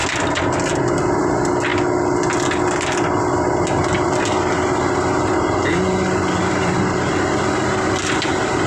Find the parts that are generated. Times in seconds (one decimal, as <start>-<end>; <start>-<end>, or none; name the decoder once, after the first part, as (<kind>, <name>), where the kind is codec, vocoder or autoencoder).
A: none